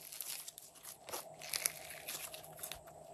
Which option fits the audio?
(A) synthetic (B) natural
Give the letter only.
B